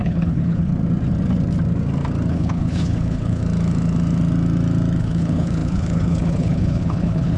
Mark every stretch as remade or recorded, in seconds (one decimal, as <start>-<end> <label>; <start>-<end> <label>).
0.0-0.7 remade; 0.7-2.3 recorded; 2.3-3.4 remade; 3.4-5.0 recorded; 5.0-7.4 remade